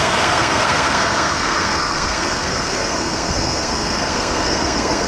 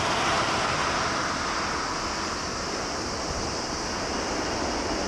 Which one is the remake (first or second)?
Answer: first